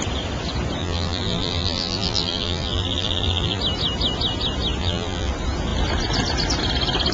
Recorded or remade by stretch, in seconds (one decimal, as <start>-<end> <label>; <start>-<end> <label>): 0.0-0.8 recorded; 0.8-3.6 remade; 3.6-4.8 recorded; 4.8-5.3 remade; 5.3-7.1 recorded